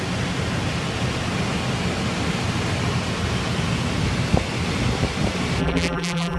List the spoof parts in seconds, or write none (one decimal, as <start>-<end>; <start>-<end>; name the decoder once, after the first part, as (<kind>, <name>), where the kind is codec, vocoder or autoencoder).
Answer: 5.6-6.4 (vocoder, BigVGAN v2)